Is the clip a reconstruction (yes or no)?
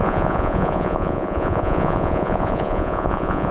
yes